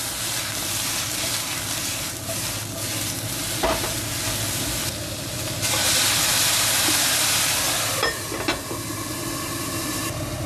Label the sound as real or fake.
real